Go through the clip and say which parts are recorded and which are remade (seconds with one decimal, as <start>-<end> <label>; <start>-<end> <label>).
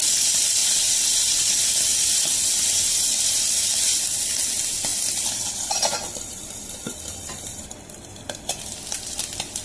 0.0-0.6 recorded; 0.6-1.5 remade; 1.5-1.9 recorded; 1.9-4.2 remade; 4.2-4.9 recorded; 4.9-8.4 remade; 8.4-9.6 recorded